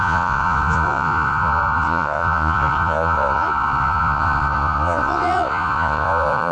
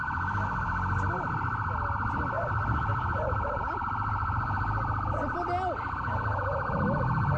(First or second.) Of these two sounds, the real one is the second